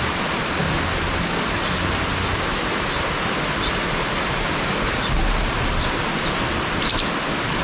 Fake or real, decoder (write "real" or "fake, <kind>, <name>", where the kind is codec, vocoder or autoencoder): real